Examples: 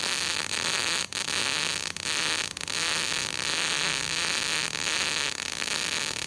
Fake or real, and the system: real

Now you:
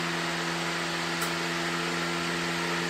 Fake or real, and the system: real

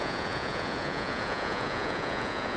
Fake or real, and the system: fake, vocoder, Vocos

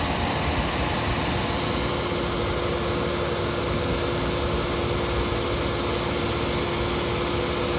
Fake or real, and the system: real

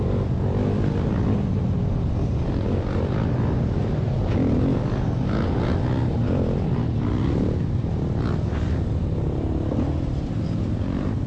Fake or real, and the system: real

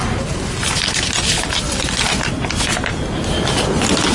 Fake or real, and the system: real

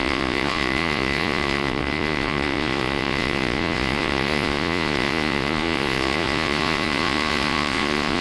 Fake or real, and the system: fake, vocoder, Vocos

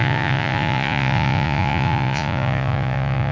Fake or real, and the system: fake, vocoder, Vocos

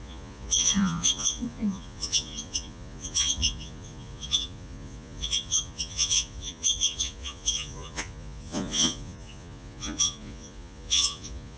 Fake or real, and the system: fake, vocoder, Vocos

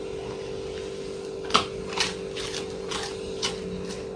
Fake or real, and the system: real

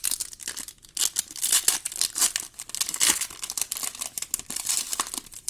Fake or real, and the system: real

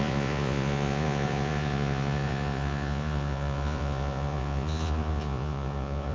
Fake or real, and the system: fake, vocoder, Vocos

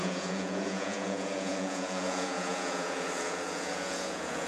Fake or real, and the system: fake, vocoder, Vocos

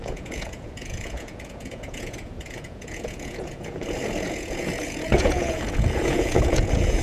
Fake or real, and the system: fake, vocoder, Vocos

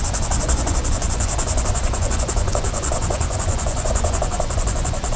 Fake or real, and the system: fake, vocoder, Vocos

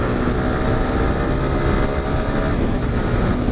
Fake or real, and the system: real